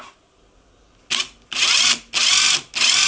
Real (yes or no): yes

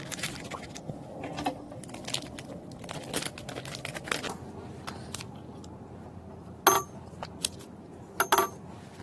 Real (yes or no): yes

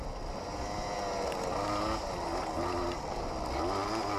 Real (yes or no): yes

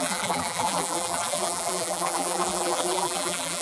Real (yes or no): no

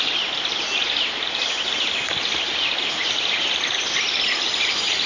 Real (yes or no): yes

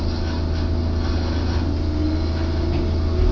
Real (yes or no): yes